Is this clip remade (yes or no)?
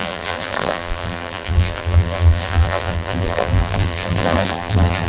yes